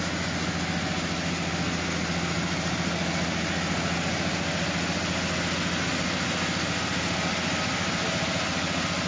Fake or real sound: real